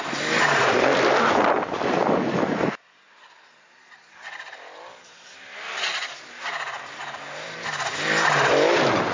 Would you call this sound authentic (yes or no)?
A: yes